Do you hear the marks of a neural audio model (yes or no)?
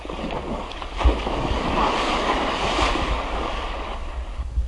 yes